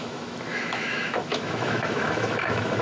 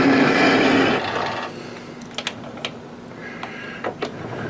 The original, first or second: second